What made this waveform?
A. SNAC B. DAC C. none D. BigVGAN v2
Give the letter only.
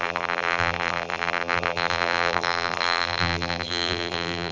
D